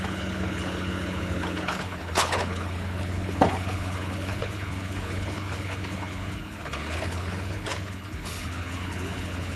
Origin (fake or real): fake